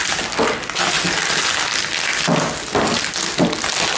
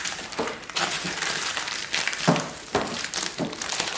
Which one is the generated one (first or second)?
second